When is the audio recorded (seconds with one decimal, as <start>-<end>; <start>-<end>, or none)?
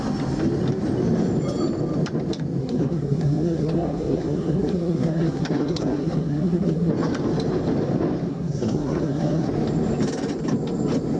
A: 0.0-2.6; 6.9-8.3; 9.5-11.2